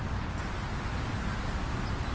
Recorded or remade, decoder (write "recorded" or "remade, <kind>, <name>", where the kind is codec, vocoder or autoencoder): recorded